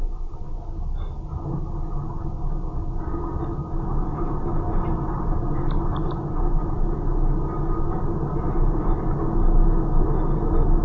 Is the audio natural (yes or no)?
yes